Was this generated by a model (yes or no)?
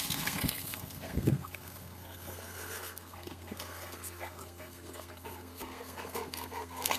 yes